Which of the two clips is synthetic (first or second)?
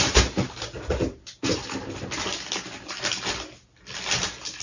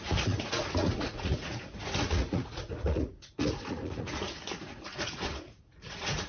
second